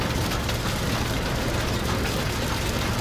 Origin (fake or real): real